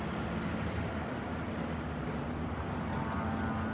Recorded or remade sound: recorded